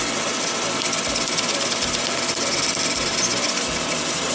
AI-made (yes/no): no